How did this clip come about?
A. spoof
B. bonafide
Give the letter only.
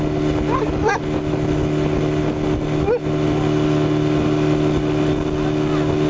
B